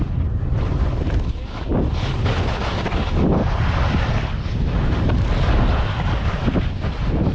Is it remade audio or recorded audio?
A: recorded